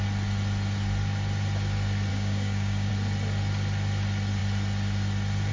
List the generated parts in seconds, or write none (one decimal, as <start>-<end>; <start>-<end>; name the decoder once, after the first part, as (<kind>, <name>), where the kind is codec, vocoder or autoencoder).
2.1-2.9 (codec, DAC)